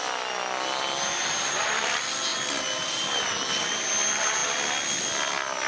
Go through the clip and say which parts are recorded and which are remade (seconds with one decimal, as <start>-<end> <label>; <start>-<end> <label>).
0.0-2.3 remade; 2.3-3.6 recorded; 3.6-4.4 remade; 4.4-5.0 recorded; 5.0-5.7 remade